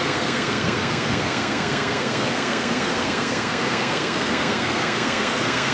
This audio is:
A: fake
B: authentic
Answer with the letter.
A